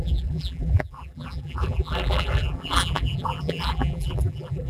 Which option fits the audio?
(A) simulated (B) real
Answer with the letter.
A